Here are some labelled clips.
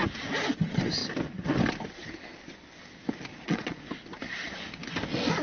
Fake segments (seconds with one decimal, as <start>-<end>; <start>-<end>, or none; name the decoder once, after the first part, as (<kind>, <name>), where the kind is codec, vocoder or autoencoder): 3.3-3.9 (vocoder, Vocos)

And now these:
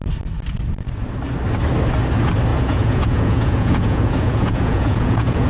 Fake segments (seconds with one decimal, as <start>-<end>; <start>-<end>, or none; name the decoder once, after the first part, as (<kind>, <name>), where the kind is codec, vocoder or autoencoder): 2.5-5.5 (vocoder, Vocos)

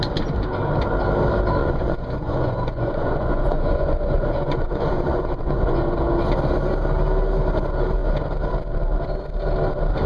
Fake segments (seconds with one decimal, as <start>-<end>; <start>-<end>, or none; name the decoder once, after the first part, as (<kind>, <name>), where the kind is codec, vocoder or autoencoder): 1.6-6.0 (vocoder, Vocos)

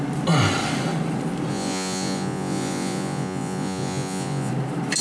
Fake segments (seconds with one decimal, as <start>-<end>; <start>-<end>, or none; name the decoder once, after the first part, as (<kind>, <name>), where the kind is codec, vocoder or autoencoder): 1.5-4.5 (vocoder, Vocos)

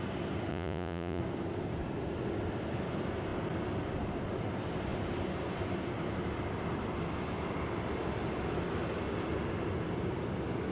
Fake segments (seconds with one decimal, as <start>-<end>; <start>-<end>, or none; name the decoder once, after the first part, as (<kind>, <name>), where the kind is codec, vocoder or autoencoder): 0.5-1.2 (vocoder, Vocos)

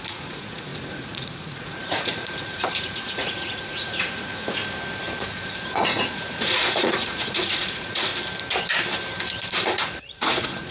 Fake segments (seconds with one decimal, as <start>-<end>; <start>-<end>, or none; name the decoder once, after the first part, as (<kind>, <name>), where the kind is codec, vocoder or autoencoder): 0.0-4.6 (vocoder, Vocos); 5.2-8.1; 9.6-10.7

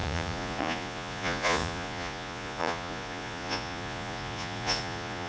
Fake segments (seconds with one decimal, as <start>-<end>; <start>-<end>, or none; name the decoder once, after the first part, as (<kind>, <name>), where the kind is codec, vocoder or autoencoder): 0.0-5.3 (vocoder, Vocos)